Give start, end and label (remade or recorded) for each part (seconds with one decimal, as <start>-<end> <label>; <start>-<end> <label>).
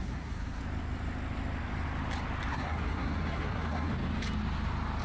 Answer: 0.0-0.6 remade; 0.6-2.5 recorded; 2.5-3.9 remade; 3.9-5.0 recorded